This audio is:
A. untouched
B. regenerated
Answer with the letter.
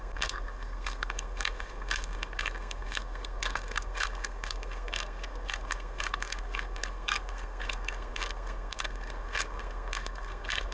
B